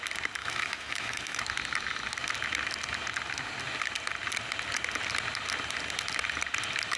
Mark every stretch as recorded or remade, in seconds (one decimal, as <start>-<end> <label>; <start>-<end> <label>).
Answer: 0.0-0.4 recorded; 0.4-1.4 remade; 1.4-7.0 recorded